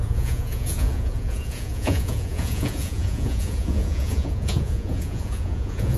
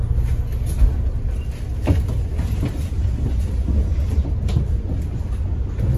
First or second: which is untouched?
second